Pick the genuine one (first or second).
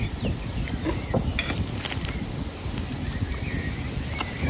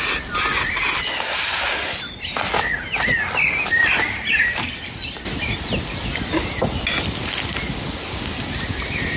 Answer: second